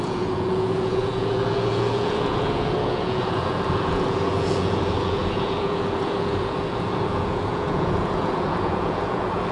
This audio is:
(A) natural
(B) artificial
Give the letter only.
B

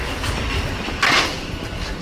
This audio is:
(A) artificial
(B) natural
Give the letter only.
B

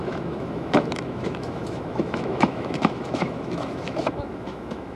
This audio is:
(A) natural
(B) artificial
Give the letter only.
B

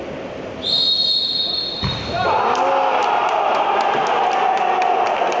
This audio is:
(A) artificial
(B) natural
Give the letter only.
B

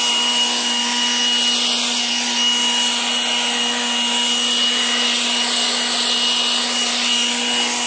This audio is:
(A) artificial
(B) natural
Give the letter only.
B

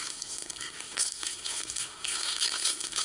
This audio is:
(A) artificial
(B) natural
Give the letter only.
A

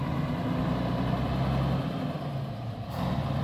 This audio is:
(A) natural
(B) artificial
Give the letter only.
A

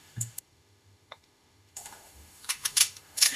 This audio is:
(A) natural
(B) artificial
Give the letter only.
B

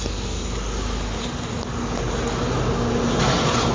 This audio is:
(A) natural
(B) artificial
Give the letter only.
A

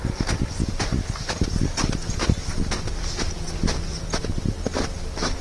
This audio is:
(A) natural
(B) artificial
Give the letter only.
A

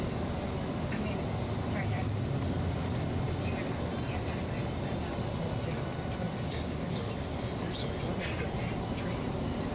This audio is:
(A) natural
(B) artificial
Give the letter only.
A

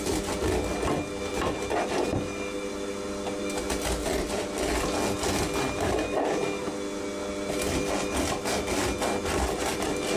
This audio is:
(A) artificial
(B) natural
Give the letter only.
B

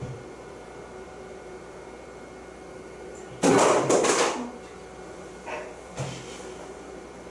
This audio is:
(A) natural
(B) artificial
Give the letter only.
B